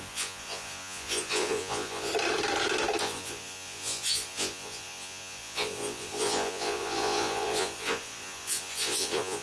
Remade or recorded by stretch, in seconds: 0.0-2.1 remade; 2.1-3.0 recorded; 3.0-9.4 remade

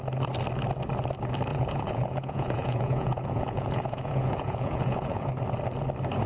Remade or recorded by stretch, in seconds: 0.0-1.5 recorded; 1.5-5.3 remade; 5.3-6.3 recorded

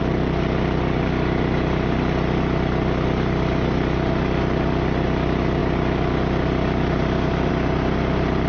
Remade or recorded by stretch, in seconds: 0.0-8.5 recorded

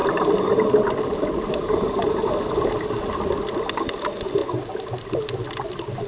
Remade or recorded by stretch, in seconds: 0.0-6.1 recorded

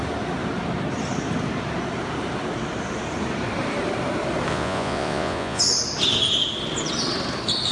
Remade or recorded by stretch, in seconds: 0.0-4.5 recorded; 4.5-5.6 remade; 5.6-7.7 recorded

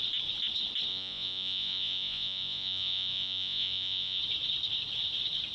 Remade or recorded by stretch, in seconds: 0.0-0.9 recorded; 0.9-4.2 remade; 4.2-5.5 recorded

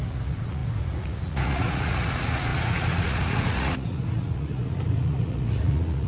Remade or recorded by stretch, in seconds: 0.0-6.1 remade